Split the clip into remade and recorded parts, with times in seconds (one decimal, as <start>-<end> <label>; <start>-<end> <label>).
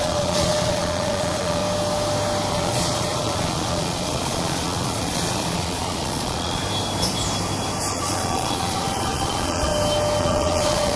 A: 0.0-1.6 remade; 1.6-2.5 recorded; 2.5-6.6 remade; 6.6-7.9 recorded; 7.9-9.7 remade; 9.7-10.2 recorded; 10.2-11.0 remade